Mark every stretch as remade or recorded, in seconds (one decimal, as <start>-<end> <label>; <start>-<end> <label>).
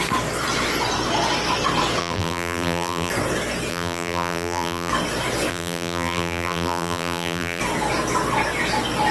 0.0-2.0 recorded; 2.0-3.1 remade; 3.1-3.7 recorded; 3.7-4.9 remade; 4.9-5.5 recorded; 5.5-7.6 remade; 7.6-9.1 recorded